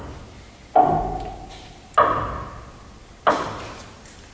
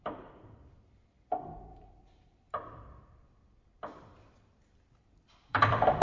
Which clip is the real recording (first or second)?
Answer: first